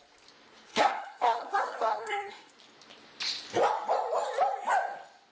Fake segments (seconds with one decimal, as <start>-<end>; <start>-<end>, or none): 0.7-2.5